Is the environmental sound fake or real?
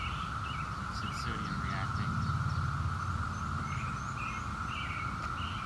real